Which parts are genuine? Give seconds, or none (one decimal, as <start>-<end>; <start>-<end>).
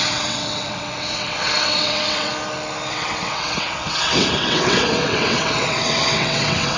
2.3-2.9